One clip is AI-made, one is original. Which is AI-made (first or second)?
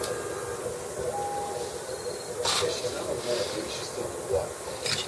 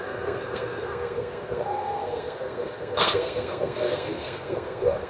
second